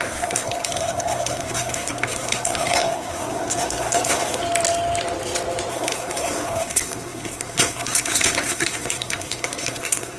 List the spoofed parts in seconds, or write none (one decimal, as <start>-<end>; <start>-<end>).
0.0-4.4; 5.7-10.2